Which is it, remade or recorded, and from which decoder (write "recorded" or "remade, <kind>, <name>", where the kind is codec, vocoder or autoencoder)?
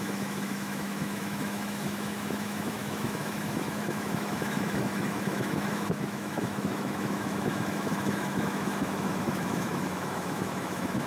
remade, autoencoder, DAC-VAE